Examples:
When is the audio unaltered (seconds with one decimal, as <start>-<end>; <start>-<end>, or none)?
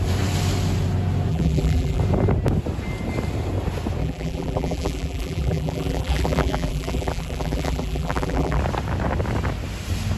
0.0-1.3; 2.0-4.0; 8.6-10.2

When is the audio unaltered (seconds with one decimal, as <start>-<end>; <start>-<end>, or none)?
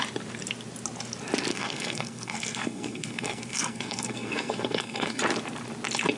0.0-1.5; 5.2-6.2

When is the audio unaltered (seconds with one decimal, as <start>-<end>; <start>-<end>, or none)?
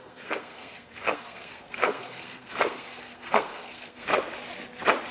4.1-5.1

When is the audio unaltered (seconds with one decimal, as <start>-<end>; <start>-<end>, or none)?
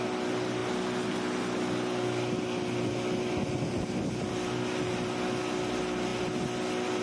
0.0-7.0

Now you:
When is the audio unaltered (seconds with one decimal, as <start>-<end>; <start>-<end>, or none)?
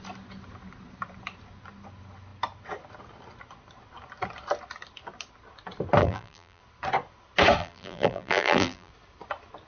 0.0-6.0; 6.6-7.6; 8.9-9.7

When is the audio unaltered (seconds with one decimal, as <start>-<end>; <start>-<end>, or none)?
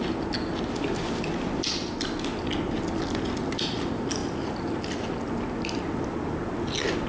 0.0-7.1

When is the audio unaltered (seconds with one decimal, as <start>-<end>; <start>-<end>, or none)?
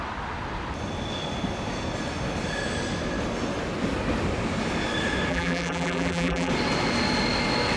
0.0-5.3; 6.5-7.8